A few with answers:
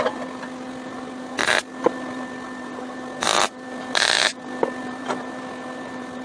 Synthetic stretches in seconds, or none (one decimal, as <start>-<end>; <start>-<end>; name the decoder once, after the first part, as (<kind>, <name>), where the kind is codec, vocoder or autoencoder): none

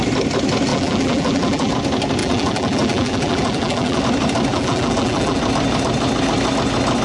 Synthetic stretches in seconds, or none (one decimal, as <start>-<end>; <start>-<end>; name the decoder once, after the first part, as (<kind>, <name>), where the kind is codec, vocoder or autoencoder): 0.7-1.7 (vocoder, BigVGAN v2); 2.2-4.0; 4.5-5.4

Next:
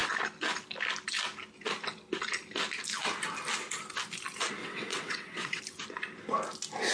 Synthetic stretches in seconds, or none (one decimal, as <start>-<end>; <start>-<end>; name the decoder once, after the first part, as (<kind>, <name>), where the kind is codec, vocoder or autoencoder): 4.6-5.6 (vocoder, WaveNeXt)